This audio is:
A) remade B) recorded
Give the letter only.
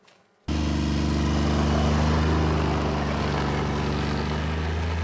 B